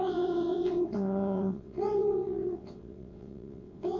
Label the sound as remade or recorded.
remade